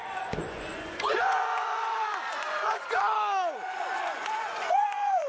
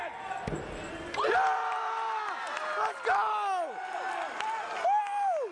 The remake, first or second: first